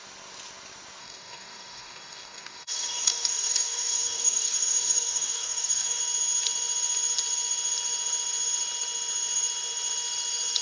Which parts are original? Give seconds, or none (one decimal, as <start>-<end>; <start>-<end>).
0.0-1.0; 6.0-10.6